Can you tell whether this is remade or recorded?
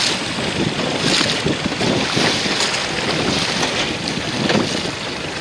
recorded